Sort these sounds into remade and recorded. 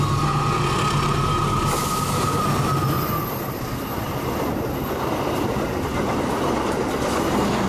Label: recorded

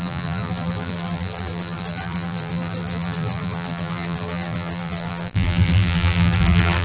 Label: remade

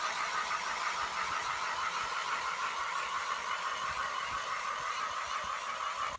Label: recorded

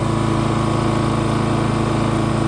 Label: recorded